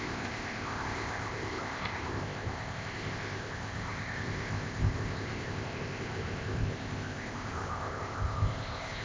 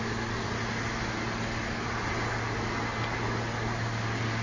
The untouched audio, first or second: second